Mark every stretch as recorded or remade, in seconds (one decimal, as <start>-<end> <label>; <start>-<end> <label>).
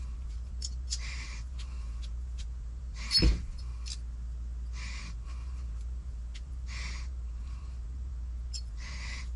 0.0-3.7 remade; 3.7-5.0 recorded; 5.0-9.4 remade